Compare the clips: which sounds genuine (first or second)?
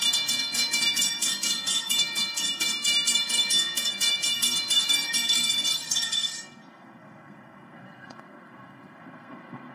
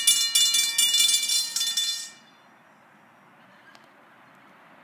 second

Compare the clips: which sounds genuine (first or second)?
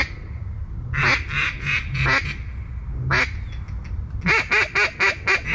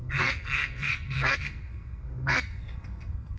first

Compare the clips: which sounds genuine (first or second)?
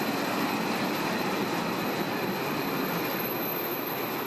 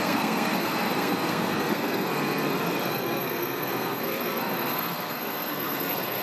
first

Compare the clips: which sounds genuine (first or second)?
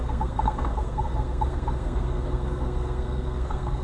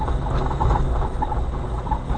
second